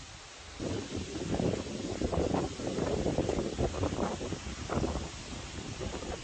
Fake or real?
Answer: real